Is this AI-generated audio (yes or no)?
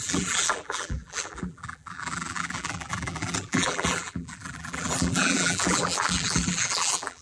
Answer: yes